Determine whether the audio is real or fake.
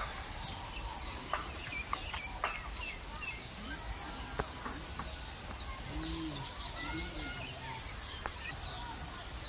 real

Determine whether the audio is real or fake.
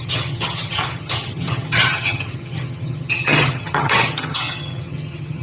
fake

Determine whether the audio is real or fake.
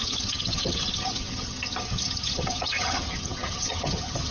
fake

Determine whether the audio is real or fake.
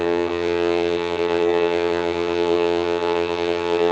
fake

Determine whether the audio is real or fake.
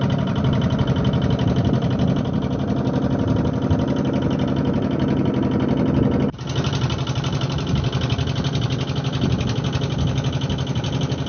real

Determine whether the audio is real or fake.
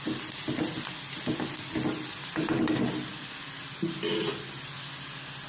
real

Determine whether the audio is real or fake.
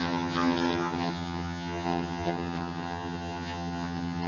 fake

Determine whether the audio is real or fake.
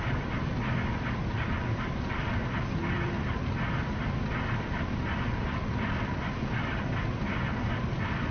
real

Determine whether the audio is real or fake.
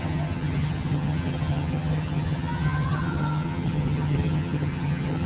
fake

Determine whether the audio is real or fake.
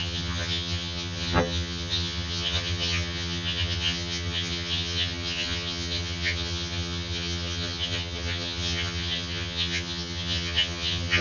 fake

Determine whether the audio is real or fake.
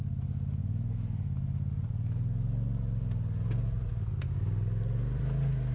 real